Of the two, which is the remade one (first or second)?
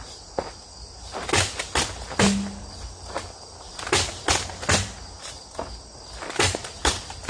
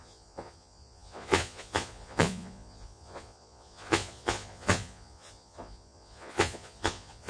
second